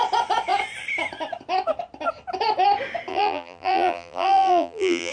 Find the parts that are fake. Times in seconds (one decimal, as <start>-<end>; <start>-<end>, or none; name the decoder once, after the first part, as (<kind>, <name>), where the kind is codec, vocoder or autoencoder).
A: 3.1-5.1 (vocoder, BigVGAN v2)